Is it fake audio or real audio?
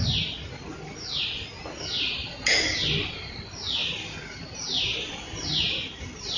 real